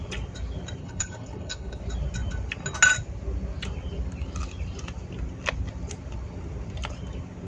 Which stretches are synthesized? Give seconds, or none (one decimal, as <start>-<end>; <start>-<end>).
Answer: 0.8-1.8